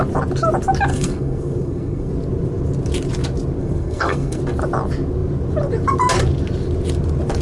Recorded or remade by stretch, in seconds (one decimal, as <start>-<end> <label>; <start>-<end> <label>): 0.0-0.9 recorded; 0.9-2.1 remade; 2.1-3.6 recorded; 3.6-4.4 remade; 4.4-7.4 recorded